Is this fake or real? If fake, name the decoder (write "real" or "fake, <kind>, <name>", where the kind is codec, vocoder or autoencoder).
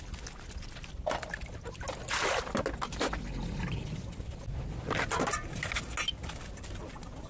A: real